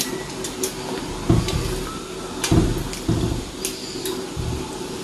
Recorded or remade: recorded